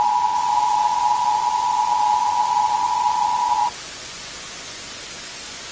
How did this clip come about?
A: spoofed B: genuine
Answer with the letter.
A